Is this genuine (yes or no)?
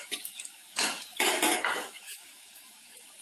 no